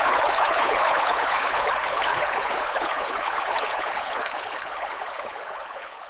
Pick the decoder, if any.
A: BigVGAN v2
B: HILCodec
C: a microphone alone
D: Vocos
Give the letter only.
B